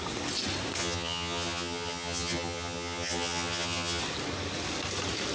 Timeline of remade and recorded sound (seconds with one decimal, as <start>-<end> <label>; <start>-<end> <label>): 0.0-0.8 recorded; 0.8-4.0 remade; 4.0-5.3 recorded